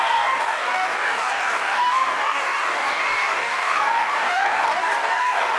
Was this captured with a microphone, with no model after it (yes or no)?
no